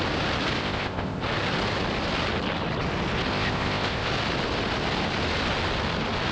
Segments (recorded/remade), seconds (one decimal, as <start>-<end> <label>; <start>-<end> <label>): 0.0-0.6 recorded; 0.6-1.2 remade; 1.2-3.3 recorded; 3.3-4.1 remade; 4.1-6.3 recorded